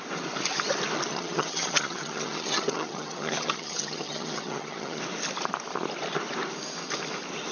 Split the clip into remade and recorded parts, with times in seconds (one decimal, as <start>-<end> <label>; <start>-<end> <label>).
0.0-1.1 recorded; 1.1-5.0 remade; 5.0-7.5 recorded